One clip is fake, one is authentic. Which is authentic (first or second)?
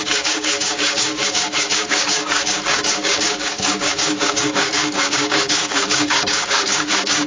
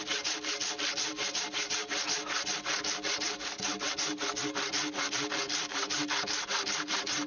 second